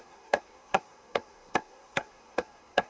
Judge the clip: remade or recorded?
remade